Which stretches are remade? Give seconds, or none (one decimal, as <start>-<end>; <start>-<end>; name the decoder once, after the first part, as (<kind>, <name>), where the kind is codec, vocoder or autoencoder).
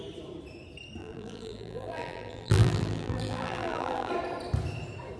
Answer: 1.0-4.1 (vocoder, BigVGAN v2)